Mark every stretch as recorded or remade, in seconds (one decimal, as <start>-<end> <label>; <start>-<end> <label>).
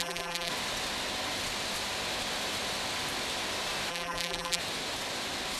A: 0.0-0.5 remade; 0.5-3.9 recorded; 3.9-4.6 remade; 4.6-5.6 recorded